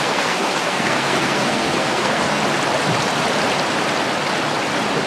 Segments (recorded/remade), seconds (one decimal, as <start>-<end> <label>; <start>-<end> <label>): 0.0-2.4 remade; 2.4-5.1 recorded